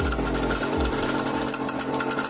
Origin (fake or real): real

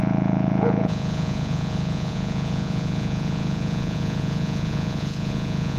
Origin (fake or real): fake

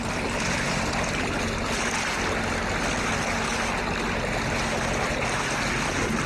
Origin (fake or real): real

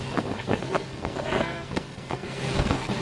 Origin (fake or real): fake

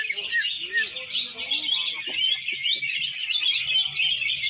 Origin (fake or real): real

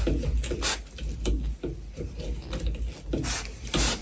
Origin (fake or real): real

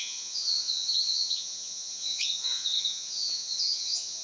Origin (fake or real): fake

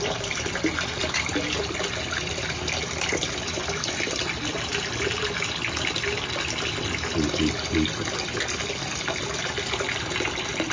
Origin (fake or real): real